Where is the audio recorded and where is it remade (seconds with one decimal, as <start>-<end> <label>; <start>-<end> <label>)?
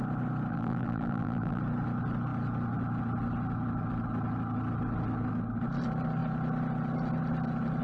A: 0.0-0.5 recorded; 0.5-1.6 remade; 1.6-7.8 recorded